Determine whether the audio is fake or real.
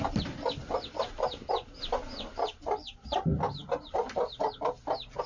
real